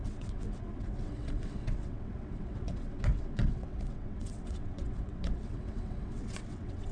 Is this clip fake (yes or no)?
yes